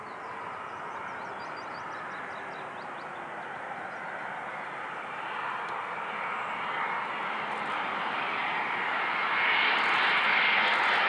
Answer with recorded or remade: recorded